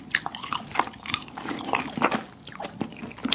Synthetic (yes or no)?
no